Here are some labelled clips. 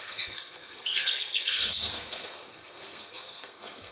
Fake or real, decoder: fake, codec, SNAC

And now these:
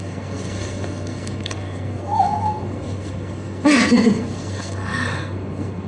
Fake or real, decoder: fake, codec, SNAC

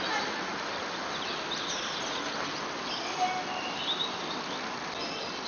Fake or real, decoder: real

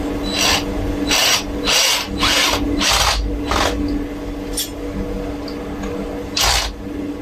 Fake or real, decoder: real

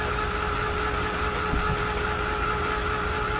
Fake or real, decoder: real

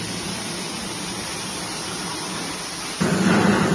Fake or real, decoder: real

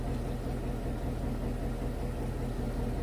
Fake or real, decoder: real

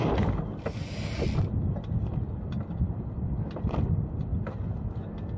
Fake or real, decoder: real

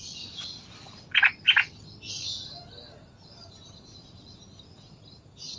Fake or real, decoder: real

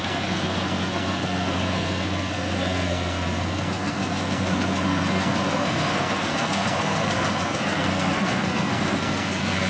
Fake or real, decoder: fake, codec, SNAC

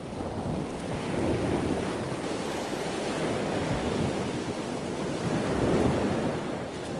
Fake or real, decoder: real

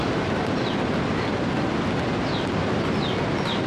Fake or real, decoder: real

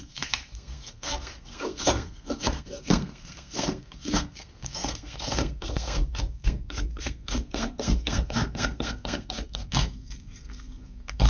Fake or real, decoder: fake, codec, SNAC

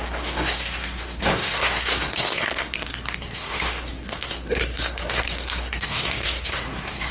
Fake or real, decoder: fake, codec, SNAC